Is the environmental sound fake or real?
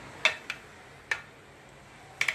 real